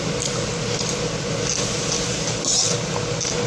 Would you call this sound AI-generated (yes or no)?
no